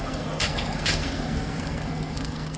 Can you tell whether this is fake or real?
fake